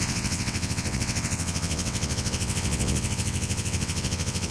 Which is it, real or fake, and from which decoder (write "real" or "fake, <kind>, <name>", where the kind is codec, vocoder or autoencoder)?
fake, vocoder, WaveNeXt